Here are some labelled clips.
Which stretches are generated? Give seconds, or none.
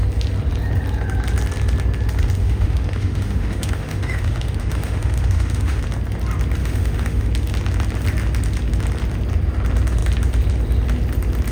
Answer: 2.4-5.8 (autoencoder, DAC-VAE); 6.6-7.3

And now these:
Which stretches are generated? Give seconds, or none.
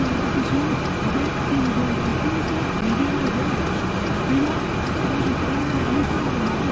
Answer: 5.6-6.3 (codec, SNAC)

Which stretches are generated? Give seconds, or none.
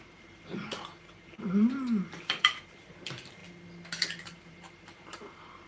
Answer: 0.0-3.4 (vocoder, BigVGAN v2); 4.2-5.7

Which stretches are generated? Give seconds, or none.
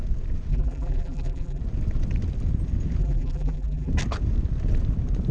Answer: 0.5-1.6 (vocoder, BigVGAN v2); 3.0-3.9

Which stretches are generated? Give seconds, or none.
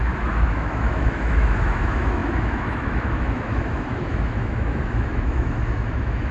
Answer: 0.0-6.3 (autoencoder, DAC-VAE)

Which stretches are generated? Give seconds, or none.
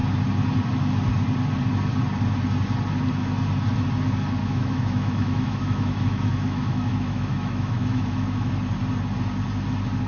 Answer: 4.4-8.5 (autoencoder, DAC-VAE)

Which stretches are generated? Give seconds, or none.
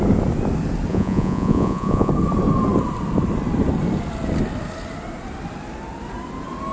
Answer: 0.9-2.1 (vocoder, Vocos)